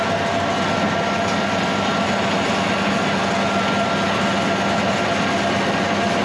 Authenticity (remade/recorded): recorded